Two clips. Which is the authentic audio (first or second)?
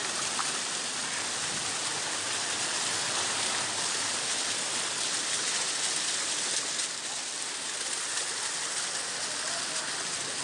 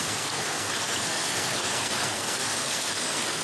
first